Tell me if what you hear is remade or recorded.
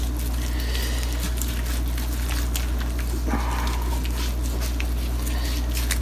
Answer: recorded